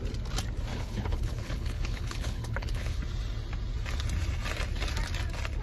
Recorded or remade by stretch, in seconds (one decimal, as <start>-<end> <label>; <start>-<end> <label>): 0.0-0.7 recorded; 0.7-3.0 remade; 3.0-5.6 recorded